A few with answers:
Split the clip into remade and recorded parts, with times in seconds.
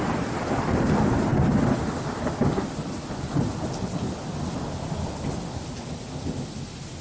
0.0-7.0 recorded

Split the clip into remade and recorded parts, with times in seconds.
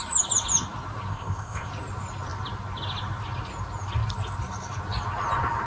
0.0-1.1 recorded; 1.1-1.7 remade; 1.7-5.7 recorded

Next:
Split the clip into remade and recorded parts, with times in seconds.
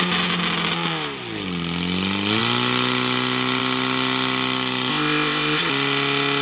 0.0-4.9 recorded; 4.9-5.7 remade; 5.7-6.4 recorded